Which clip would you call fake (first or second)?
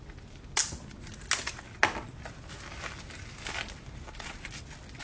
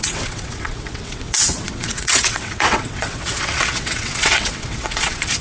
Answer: second